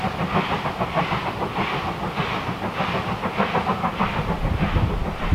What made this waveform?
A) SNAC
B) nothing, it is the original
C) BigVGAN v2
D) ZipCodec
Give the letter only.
B